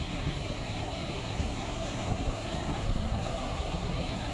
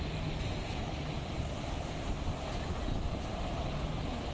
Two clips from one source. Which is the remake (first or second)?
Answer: first